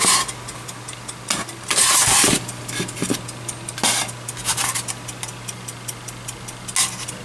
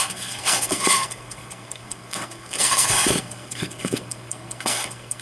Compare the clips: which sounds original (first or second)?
first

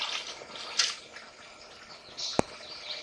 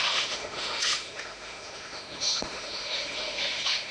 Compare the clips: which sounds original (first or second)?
first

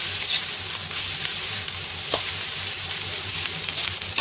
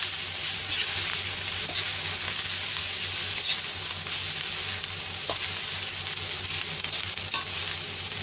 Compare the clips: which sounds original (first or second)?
second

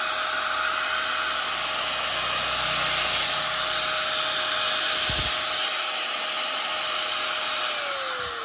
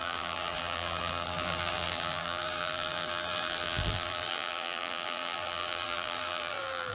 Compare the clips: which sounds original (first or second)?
first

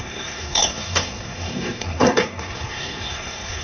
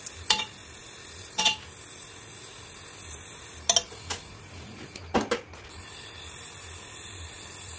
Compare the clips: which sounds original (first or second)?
second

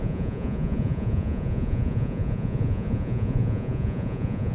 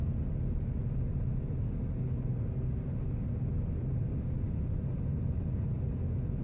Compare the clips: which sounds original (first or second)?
second